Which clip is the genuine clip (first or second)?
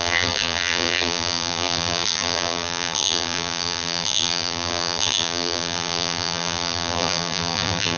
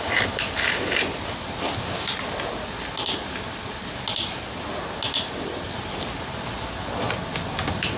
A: second